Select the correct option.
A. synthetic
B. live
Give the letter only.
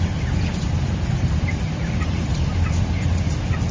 A